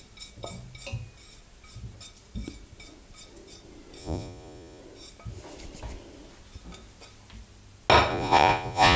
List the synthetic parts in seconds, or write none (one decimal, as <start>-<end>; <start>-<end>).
4.0-4.8; 8.1-9.0